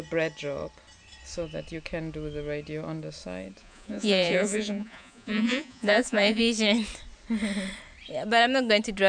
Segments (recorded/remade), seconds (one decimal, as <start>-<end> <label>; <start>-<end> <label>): 0.0-3.6 recorded; 3.6-6.4 remade; 6.4-9.1 recorded